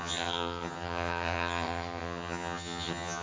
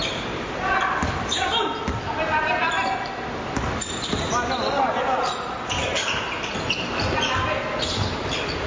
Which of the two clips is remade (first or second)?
first